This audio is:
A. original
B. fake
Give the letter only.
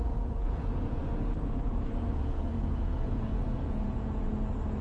B